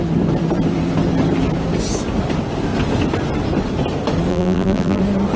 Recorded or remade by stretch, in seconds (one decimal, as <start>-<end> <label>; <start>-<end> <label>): 0.0-4.3 recorded; 4.3-5.0 remade; 5.0-5.4 recorded

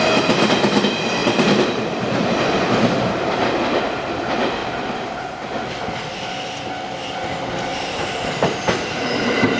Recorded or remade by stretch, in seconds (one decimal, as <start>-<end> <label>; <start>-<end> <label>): 0.0-1.2 recorded; 1.2-3.8 remade; 3.8-4.6 recorded; 4.6-5.3 remade; 5.3-7.7 recorded; 7.7-9.6 remade